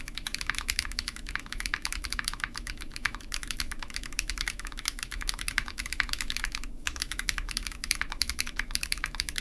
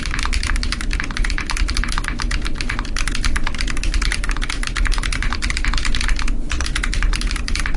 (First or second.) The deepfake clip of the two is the first